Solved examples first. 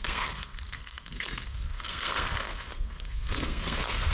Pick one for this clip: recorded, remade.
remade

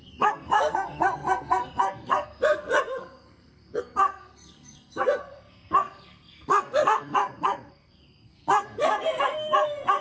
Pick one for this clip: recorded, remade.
remade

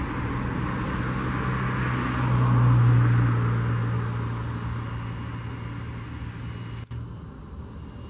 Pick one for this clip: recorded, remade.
recorded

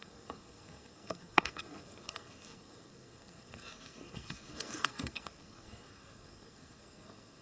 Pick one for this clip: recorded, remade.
remade